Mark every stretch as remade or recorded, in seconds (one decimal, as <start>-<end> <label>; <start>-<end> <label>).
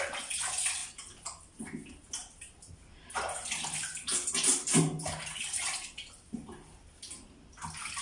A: 0.0-8.0 recorded